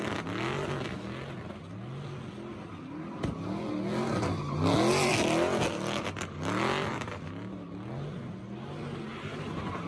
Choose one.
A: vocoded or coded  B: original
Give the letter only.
B